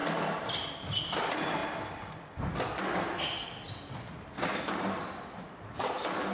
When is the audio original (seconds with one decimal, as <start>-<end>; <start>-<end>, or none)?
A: 1.6-5.4